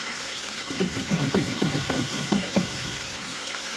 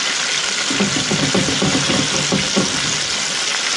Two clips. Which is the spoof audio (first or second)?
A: first